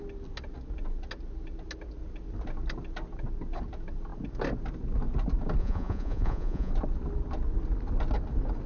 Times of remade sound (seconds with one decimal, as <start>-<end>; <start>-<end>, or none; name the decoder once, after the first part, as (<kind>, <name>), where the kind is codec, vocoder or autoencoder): 5.6-6.7 (vocoder, Vocos)